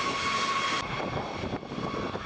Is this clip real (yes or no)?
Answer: yes